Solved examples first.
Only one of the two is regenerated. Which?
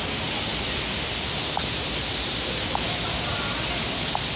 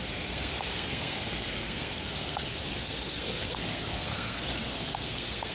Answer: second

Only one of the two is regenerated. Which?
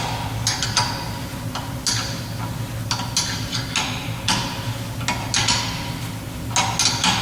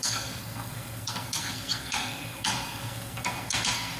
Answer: second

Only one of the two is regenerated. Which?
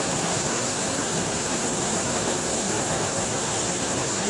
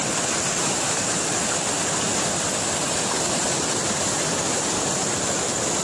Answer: first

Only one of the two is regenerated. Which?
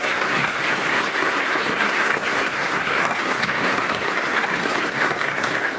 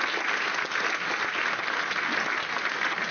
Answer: first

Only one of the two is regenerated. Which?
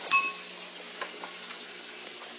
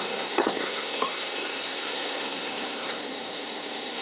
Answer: second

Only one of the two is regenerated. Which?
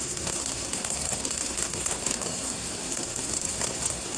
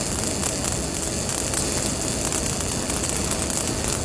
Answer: first